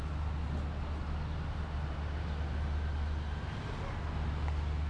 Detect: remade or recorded recorded